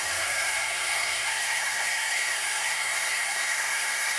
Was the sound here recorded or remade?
remade